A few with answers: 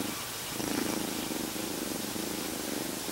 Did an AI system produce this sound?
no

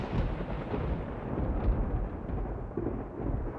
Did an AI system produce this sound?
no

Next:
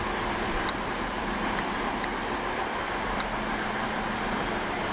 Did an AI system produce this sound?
yes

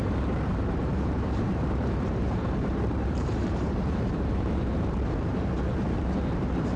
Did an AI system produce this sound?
yes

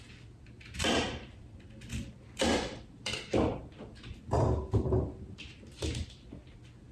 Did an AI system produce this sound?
yes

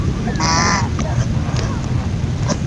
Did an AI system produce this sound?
yes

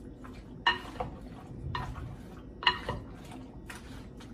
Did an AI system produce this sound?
no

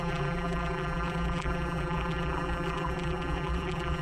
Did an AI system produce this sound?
yes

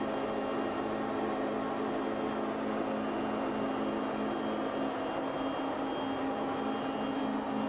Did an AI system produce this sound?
no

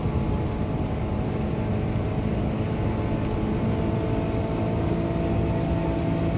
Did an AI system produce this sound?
no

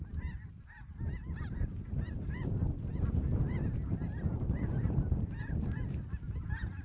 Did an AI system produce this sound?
yes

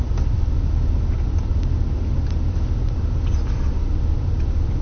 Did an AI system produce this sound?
yes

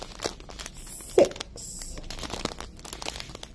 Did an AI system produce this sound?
no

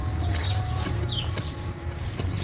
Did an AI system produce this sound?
yes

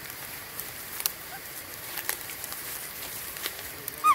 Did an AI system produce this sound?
yes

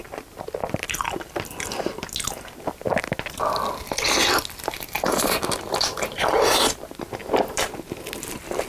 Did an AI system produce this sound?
no